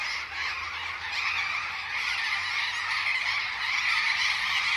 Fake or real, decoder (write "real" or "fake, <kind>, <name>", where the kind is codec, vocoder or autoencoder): real